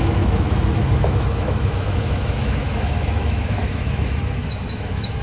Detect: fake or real fake